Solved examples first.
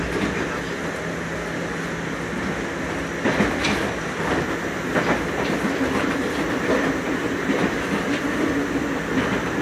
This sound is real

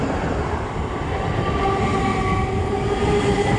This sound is real